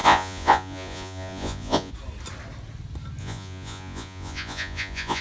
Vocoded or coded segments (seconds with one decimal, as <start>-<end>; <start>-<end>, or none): 0.0-1.9; 3.2-5.2